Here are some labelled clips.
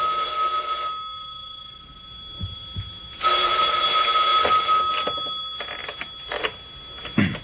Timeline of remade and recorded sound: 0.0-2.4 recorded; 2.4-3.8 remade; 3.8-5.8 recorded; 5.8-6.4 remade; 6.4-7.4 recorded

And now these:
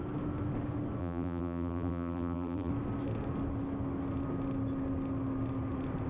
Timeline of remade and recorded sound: 0.0-1.0 recorded; 1.0-2.7 remade; 2.7-6.1 recorded